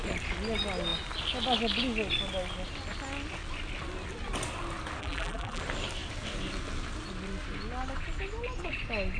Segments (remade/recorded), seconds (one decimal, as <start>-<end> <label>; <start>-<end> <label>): 0.0-5.0 recorded; 5.0-5.6 remade; 5.6-9.2 recorded